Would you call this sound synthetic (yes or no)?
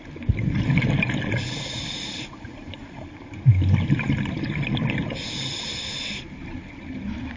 no